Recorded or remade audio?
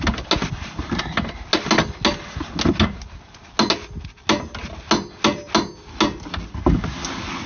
recorded